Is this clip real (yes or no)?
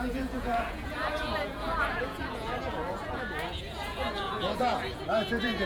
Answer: no